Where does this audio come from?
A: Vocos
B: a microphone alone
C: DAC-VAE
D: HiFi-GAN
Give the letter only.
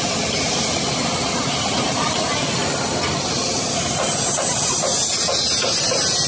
B